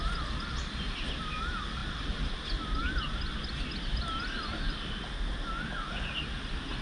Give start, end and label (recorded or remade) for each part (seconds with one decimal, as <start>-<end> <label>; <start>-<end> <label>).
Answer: 0.0-6.8 recorded